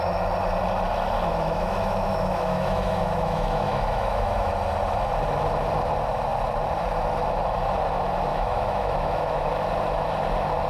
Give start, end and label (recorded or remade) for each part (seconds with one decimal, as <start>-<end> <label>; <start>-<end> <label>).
0.0-1.3 recorded; 1.3-4.5 remade; 4.5-8.3 recorded; 8.3-9.5 remade; 9.5-10.7 recorded